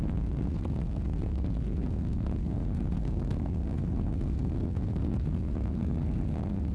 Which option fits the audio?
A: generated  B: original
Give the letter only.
A